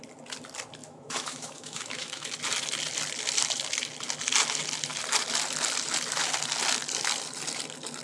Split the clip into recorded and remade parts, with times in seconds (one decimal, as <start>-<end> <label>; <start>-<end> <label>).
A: 0.0-0.8 recorded; 0.8-2.3 remade; 2.3-8.0 recorded